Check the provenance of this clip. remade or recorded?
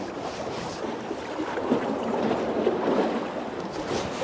recorded